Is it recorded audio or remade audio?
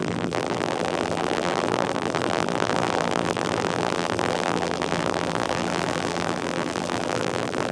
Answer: remade